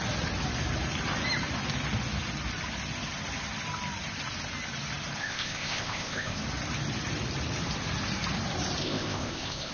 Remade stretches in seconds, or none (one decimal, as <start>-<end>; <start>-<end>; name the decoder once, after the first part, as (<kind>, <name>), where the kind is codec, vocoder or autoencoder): 5.2-6.4 (codec, ZipCodec); 8.8-9.7